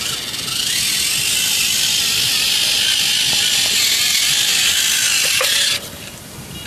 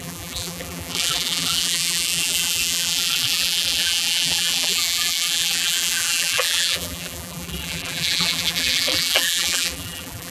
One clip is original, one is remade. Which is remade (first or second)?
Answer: second